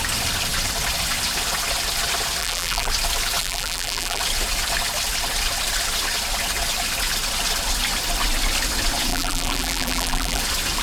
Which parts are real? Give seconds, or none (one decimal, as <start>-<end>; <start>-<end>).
0.0-2.4; 2.9-3.4; 4.2-9.1; 10.4-10.8